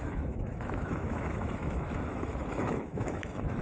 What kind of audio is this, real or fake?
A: fake